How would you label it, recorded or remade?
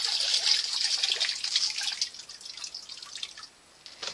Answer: recorded